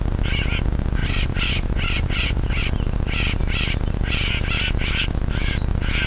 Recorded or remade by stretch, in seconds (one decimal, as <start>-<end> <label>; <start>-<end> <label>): 0.0-1.0 recorded; 1.0-2.6 remade; 2.6-6.1 recorded